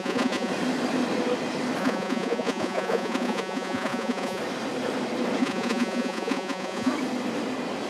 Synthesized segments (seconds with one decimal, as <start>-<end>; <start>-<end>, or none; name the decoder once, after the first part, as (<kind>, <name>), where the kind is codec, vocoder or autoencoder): 0.0-0.5 (vocoder, Vocos); 1.8-4.4; 5.4-6.9